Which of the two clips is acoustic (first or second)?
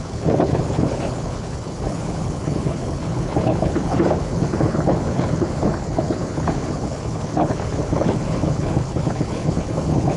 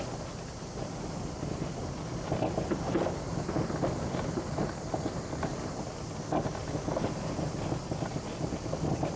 second